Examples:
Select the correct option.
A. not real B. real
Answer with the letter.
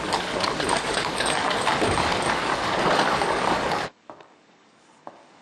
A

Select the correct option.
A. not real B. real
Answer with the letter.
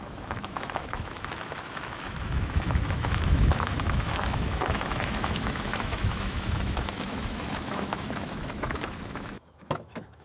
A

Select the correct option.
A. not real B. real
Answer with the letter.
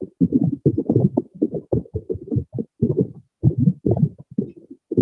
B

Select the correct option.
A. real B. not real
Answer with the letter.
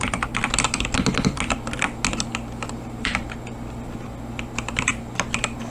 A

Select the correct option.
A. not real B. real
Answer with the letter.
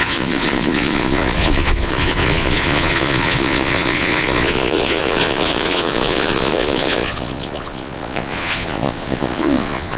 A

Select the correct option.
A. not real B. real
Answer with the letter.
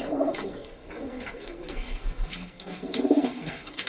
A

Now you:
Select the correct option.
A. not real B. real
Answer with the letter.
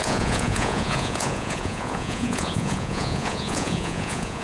A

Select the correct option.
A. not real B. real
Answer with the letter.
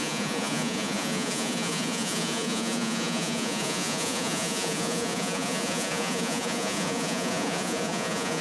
A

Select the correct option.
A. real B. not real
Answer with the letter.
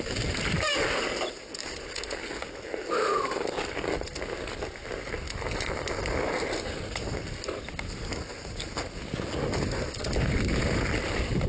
A